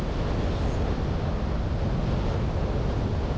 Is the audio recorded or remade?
recorded